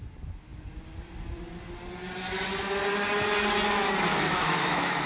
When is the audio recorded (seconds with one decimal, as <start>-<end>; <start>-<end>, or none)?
0.0-4.1